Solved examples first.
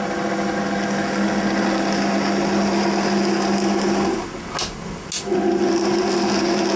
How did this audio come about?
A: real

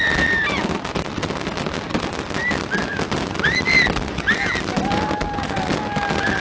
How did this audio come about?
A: real